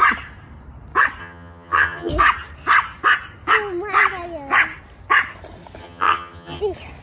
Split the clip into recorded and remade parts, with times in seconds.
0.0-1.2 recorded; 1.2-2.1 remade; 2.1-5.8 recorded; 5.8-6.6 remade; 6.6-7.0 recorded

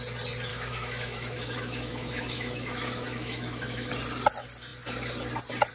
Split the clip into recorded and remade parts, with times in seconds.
0.0-0.5 recorded; 0.5-3.9 remade; 3.9-5.7 recorded

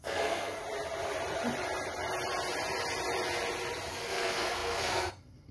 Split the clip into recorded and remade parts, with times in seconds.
0.0-0.6 remade; 0.6-3.9 recorded; 3.9-5.5 remade

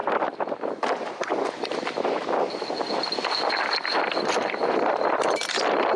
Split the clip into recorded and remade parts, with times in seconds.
0.0-6.0 recorded

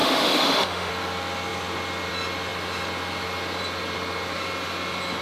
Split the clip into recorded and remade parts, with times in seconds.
0.0-0.9 remade; 0.9-5.2 recorded

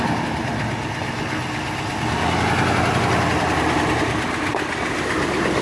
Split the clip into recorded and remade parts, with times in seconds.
0.0-5.6 recorded